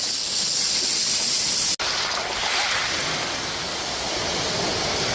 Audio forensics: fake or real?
real